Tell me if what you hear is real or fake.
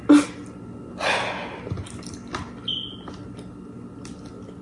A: real